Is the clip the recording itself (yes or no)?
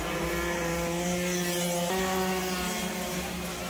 yes